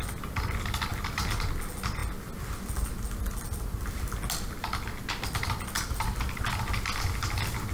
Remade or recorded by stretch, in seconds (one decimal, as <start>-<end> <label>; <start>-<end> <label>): 0.0-0.9 recorded; 0.9-1.5 remade; 1.5-7.7 recorded